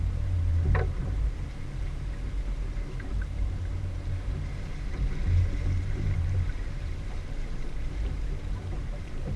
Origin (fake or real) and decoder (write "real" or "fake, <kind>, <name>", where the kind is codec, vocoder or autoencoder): fake, vocoder, BigVGAN v2